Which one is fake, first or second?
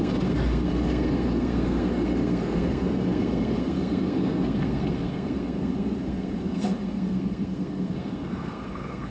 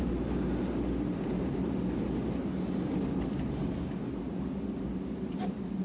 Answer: first